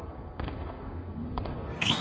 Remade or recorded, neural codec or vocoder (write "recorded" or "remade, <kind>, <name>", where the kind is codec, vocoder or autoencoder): remade, codec, SNAC